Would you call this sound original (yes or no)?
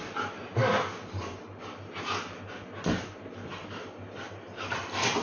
yes